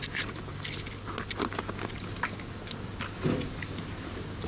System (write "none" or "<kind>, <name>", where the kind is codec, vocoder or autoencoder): none